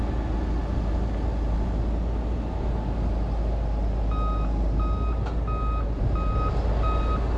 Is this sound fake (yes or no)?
no